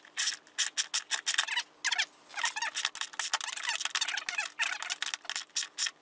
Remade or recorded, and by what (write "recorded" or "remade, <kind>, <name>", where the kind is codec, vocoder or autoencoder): recorded